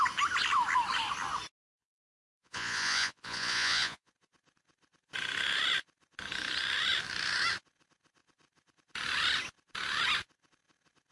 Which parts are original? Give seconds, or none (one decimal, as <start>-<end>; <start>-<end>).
0.0-1.6; 4.1-11.1